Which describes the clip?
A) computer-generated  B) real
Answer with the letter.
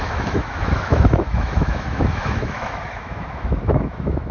A